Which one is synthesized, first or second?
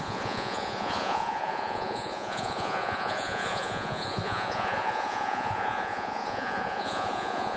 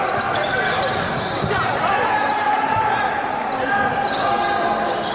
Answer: first